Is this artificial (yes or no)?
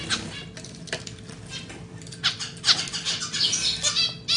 no